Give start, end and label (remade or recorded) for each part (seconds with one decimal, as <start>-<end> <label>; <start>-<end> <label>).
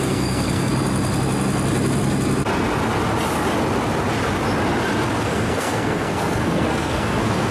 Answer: 0.0-0.7 remade; 0.7-5.2 recorded; 5.2-7.5 remade